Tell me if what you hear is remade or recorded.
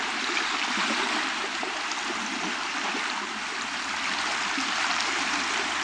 remade